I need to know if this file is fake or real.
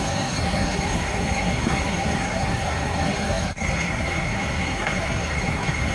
fake